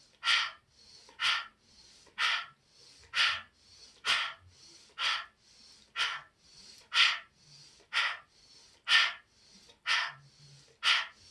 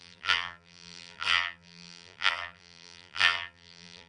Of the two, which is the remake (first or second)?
second